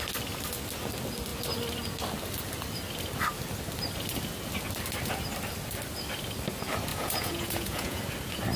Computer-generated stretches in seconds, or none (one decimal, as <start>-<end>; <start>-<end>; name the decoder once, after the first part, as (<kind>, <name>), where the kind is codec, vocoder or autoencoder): 6.9-8.0 (vocoder, Vocos)